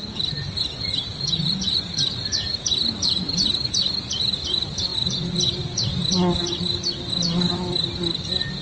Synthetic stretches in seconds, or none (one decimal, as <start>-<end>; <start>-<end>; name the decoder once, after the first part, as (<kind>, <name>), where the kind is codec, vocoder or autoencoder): none